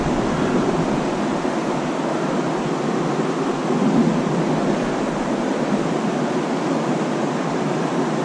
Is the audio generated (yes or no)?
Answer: no